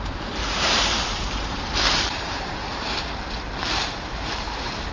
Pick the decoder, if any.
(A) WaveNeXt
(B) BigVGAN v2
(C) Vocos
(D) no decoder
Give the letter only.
B